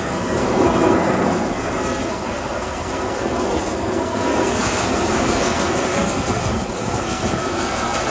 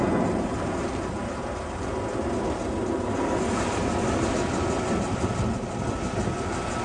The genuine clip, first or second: second